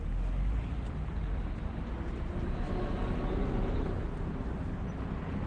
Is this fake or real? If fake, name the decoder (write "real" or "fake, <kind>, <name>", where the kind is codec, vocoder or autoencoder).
real